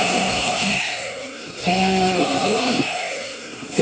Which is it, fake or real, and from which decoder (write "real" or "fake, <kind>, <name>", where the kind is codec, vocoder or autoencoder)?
fake, codec, SNAC